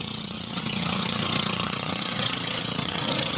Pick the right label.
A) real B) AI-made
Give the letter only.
B